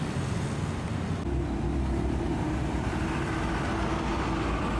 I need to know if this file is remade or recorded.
recorded